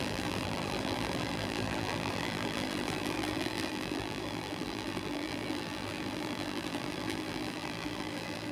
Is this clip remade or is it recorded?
remade